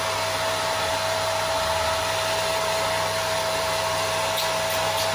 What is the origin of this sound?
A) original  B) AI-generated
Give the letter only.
A